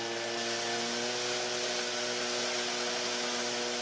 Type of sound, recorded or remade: recorded